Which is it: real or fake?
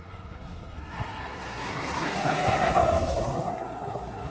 fake